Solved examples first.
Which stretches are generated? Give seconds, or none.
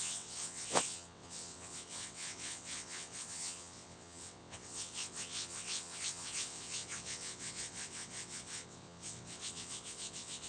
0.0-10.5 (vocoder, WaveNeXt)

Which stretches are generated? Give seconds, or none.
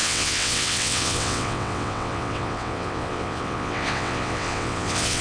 0.0-5.2 (vocoder, WaveNeXt)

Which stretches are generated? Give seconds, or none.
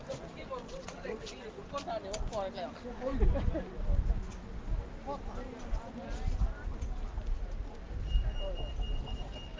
0.6-1.4 (vocoder, WaveNeXt)